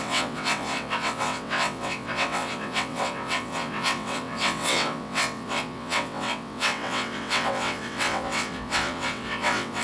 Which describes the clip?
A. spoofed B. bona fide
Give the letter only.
A